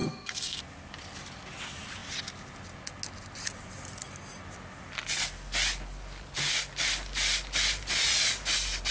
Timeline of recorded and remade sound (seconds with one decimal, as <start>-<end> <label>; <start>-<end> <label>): 0.0-0.6 remade; 0.6-8.9 recorded